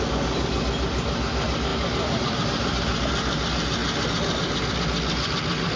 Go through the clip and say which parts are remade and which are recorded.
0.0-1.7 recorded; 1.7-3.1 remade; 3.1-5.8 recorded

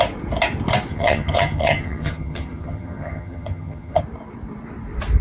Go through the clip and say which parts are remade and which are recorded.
0.0-0.9 recorded; 0.9-4.0 remade; 4.0-5.2 recorded

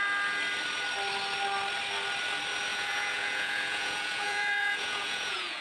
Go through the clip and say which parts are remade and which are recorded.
0.0-2.7 recorded; 2.7-5.6 remade

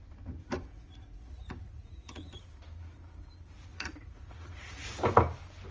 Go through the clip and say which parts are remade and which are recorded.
0.0-0.7 recorded; 0.7-2.4 remade; 2.4-3.7 recorded; 3.7-5.0 remade; 5.0-5.7 recorded

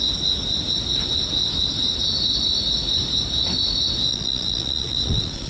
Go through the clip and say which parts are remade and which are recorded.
0.0-4.1 recorded; 4.1-5.5 remade

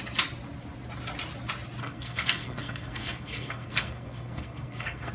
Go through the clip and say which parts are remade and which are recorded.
0.0-1.8 recorded; 1.8-5.1 remade